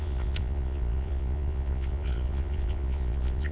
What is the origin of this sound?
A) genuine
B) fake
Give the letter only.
B